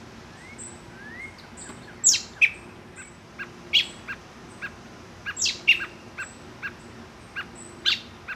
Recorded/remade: recorded